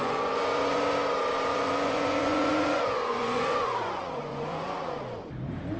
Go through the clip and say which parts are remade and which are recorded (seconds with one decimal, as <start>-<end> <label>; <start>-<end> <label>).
0.0-0.8 remade; 0.8-1.5 recorded; 1.5-5.0 remade; 5.0-5.8 recorded